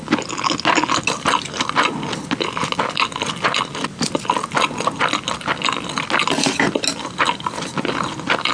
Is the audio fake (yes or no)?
no